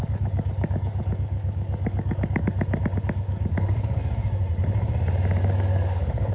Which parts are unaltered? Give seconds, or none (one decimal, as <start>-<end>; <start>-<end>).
2.5-3.0; 4.0-5.4